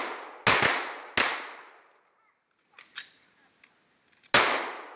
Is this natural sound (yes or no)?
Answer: yes